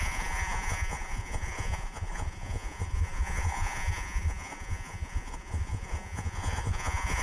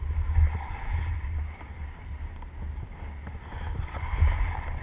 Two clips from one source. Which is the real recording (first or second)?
second